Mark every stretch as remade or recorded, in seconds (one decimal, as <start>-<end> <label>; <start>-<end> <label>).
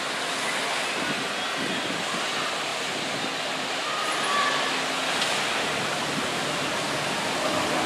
0.0-7.9 recorded